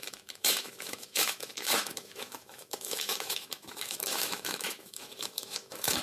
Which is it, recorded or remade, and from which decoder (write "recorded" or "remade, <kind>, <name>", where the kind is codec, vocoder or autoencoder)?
remade, autoencoder, DAC-VAE